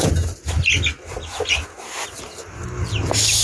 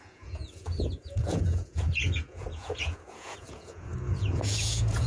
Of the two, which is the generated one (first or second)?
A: second